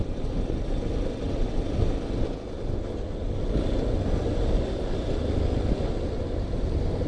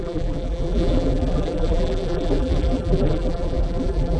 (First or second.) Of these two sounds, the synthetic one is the second